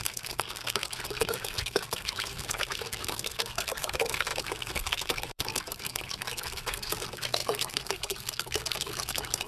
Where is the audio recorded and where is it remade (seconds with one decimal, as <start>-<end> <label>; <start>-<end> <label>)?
0.0-9.5 remade

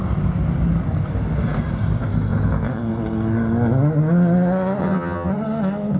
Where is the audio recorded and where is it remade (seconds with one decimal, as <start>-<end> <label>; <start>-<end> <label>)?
0.0-4.8 recorded; 4.8-5.3 remade; 5.3-6.0 recorded

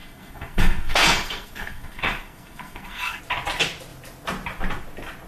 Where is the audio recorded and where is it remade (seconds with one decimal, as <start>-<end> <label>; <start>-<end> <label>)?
0.0-3.2 remade; 3.2-5.3 recorded

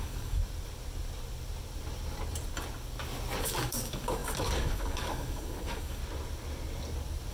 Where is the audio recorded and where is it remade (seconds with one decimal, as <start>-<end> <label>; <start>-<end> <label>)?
0.0-0.4 remade; 0.4-3.4 recorded; 3.4-6.0 remade; 6.0-7.3 recorded

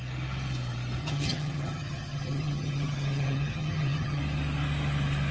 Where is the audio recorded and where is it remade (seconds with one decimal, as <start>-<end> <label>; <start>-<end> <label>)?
0.0-1.0 recorded; 1.0-4.2 remade; 4.2-5.3 recorded

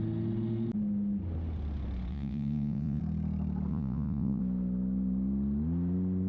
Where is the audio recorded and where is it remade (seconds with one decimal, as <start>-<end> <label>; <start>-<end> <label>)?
0.0-2.1 recorded; 2.1-3.0 remade; 3.0-3.7 recorded; 3.7-4.4 remade; 4.4-6.3 recorded

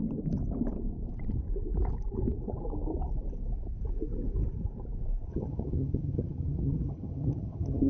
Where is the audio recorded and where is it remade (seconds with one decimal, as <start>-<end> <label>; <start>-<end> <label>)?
0.0-5.3 recorded; 5.3-7.9 remade

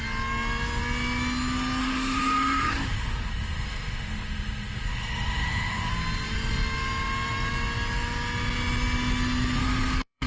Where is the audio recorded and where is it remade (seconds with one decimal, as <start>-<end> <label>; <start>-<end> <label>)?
0.0-1.8 recorded; 1.8-5.9 remade; 5.9-9.6 recorded; 9.6-10.3 remade